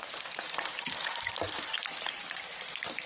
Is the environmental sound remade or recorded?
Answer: remade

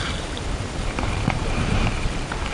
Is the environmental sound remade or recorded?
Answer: remade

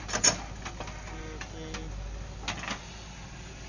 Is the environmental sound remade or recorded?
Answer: recorded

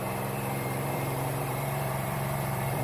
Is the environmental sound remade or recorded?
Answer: remade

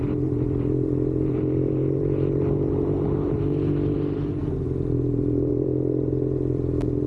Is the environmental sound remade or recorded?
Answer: remade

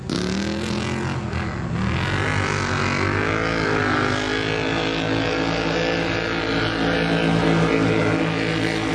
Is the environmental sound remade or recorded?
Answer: recorded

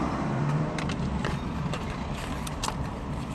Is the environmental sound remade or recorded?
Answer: remade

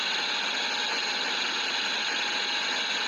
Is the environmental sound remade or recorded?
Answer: recorded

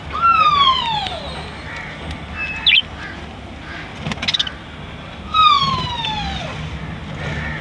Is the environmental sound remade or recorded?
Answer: recorded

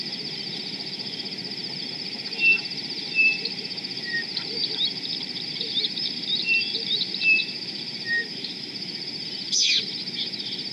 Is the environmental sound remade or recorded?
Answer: remade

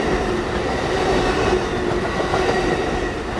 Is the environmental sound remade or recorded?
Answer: recorded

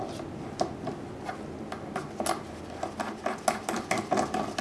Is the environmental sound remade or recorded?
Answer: recorded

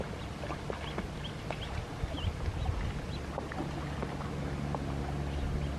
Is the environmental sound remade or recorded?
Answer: recorded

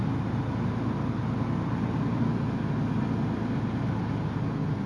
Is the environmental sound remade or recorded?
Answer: recorded